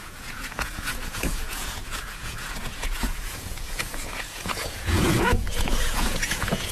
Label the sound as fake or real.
fake